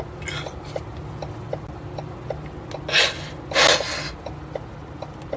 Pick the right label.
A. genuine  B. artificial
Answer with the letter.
A